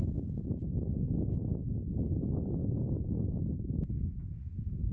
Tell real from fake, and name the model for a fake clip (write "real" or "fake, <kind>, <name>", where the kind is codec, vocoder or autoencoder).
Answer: real